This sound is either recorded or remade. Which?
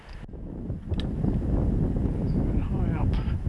recorded